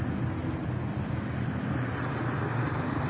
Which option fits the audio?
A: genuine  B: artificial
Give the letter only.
A